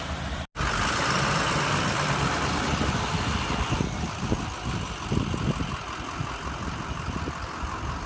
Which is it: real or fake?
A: real